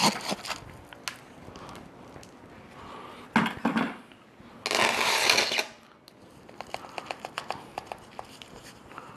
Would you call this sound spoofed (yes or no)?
no